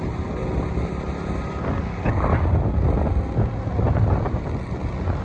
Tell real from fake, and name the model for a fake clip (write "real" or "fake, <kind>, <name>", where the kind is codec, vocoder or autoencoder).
real